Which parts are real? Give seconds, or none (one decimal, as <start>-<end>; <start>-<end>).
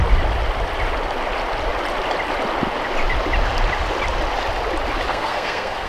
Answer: 0.0-5.1